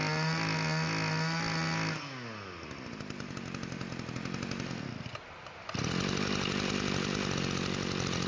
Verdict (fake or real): real